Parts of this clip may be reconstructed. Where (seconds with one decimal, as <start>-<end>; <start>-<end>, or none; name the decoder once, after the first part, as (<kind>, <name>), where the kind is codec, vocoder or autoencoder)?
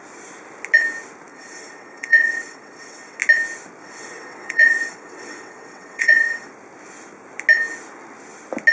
1.3-3.2 (vocoder, WaveNeXt); 3.8-6.5